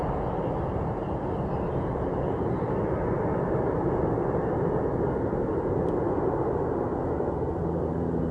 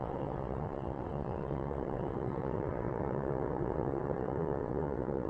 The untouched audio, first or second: first